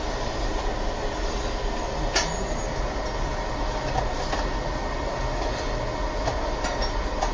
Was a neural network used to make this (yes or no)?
no